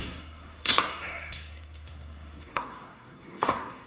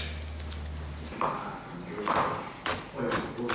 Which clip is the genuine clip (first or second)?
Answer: second